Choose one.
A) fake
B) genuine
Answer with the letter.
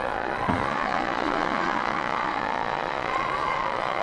A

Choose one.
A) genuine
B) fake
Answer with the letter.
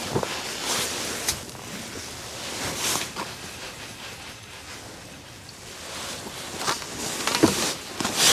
A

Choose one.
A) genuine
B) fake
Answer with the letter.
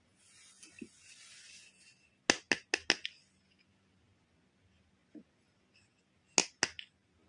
A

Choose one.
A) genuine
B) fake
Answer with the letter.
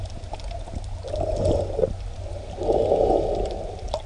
A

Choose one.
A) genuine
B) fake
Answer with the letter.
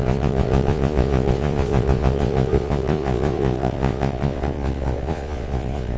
B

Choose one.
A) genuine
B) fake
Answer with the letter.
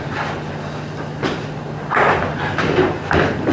A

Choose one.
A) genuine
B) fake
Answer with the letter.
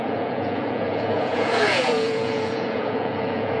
B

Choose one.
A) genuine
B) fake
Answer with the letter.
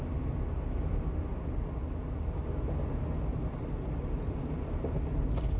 A